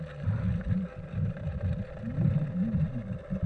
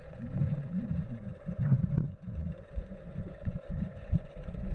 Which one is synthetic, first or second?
second